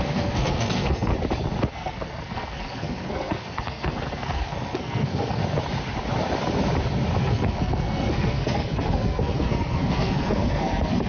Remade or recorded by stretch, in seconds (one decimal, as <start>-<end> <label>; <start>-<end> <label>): 0.0-1.1 remade; 1.1-1.7 recorded; 1.7-5.4 remade; 5.4-7.2 recorded; 7.2-11.1 remade